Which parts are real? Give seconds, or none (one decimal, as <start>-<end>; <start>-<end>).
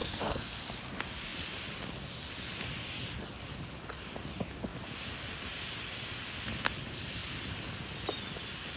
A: 0.6-8.8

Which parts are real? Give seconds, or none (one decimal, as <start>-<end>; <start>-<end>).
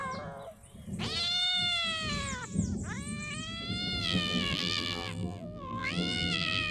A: 0.0-4.0